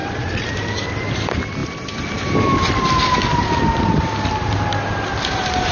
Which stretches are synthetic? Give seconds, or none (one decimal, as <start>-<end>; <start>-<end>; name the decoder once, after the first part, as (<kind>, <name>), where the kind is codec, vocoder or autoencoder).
0.0-0.5 (vocoder, Vocos)